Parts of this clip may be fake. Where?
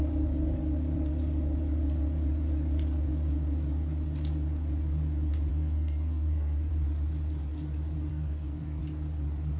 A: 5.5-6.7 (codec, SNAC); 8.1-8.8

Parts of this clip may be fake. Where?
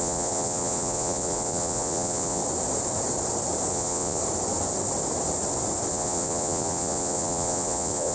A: 0.0-2.4 (vocoder, Vocos); 3.7-4.2; 5.9-8.1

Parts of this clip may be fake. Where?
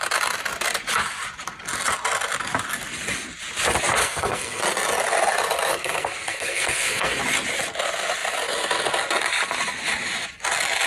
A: 4.0-4.6 (codec, SNAC); 5.7-7.2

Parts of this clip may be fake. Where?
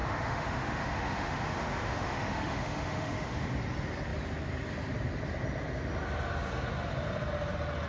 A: 0.0-3.5 (autoencoder, DAC-VAE)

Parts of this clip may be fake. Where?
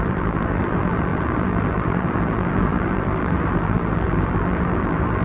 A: 0.0-5.2 (vocoder, BigVGAN v2)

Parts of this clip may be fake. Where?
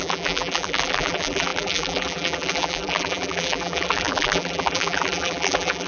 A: 0.0-5.9 (vocoder, BigVGAN v2)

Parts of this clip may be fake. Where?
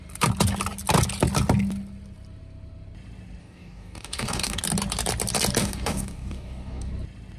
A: 3.4-4.6 (codec, DAC); 5.6-6.9